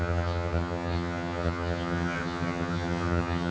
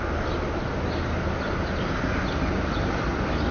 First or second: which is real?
second